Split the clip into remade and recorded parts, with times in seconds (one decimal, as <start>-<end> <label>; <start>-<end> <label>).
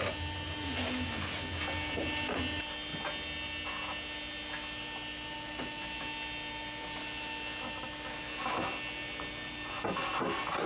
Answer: 0.0-10.7 recorded